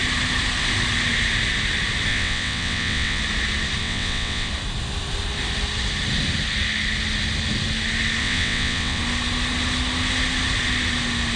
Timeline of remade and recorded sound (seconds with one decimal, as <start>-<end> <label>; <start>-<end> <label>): 0.0-2.1 recorded; 2.1-3.2 remade; 3.2-3.8 recorded; 3.8-4.5 remade; 4.5-8.2 recorded; 8.2-9.0 remade; 9.0-11.4 recorded